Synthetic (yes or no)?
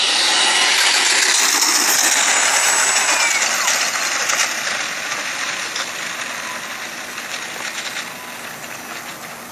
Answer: no